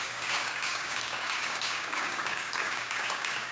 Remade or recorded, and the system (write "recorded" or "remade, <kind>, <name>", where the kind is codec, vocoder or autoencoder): remade, codec, DAC